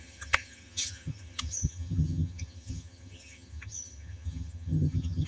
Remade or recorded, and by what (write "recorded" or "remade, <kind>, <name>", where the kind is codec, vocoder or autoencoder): remade, vocoder, HiFi-GAN